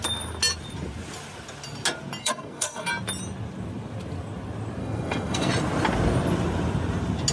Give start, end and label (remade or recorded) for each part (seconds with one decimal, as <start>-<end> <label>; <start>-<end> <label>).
0.0-2.2 recorded; 2.2-2.9 remade; 2.9-4.8 recorded; 4.8-5.5 remade; 5.5-7.3 recorded

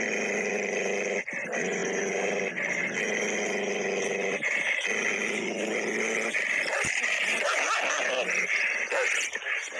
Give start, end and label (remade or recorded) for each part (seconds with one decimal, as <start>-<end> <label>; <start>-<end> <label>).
0.0-9.8 recorded

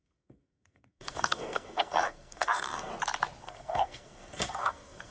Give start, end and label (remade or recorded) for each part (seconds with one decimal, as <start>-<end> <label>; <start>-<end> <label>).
0.0-2.9 remade; 2.9-3.4 recorded; 3.4-5.1 remade

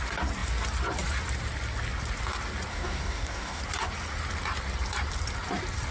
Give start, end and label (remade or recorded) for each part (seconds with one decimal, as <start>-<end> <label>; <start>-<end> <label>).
0.0-2.7 recorded; 2.7-3.6 remade; 3.6-5.9 recorded

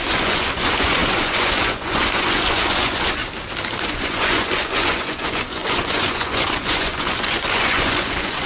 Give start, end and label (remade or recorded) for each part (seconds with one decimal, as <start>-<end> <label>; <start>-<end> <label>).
0.0-3.2 remade; 3.2-3.8 recorded; 3.8-8.5 remade

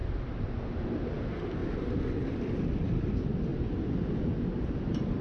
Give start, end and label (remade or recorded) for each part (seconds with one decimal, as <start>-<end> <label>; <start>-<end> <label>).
0.0-1.6 recorded; 1.6-2.6 remade; 2.6-5.2 recorded